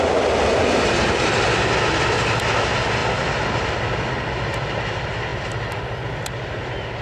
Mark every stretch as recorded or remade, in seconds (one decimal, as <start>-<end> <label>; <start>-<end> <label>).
0.0-7.0 recorded